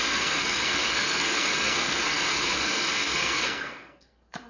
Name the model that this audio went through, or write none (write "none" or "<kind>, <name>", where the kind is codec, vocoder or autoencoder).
codec, SNAC